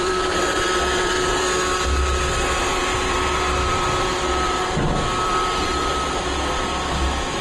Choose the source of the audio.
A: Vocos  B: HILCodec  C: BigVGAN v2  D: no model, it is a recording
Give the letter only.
C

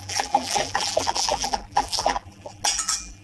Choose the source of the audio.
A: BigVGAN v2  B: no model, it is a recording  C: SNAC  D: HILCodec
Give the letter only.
A